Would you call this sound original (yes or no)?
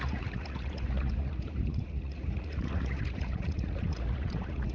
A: no